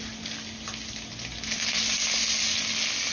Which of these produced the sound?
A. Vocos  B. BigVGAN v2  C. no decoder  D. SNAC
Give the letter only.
C